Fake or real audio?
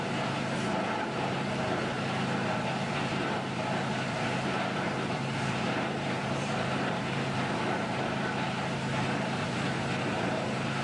fake